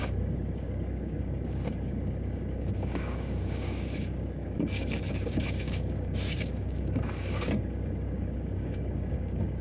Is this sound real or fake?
fake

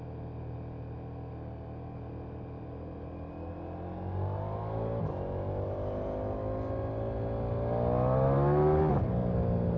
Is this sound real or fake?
real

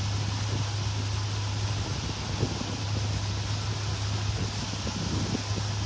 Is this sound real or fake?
real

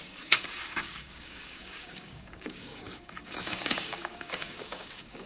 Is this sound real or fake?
fake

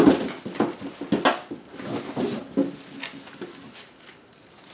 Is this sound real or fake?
real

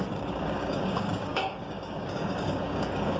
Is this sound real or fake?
fake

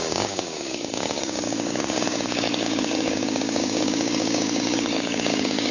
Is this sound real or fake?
fake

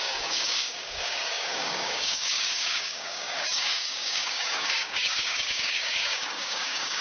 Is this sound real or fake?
fake